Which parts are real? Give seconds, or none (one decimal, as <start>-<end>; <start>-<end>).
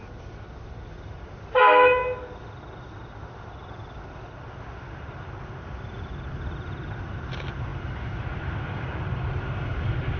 0.0-10.2